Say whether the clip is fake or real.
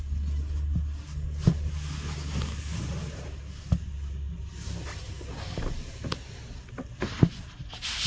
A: real